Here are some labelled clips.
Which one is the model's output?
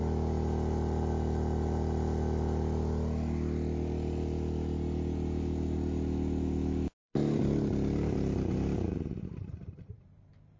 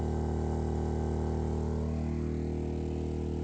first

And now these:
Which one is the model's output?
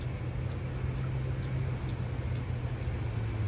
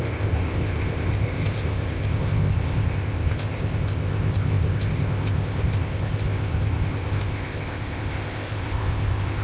second